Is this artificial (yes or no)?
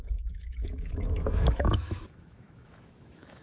yes